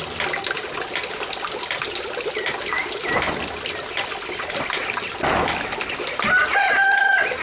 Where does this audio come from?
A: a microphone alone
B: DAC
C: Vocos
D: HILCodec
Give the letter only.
A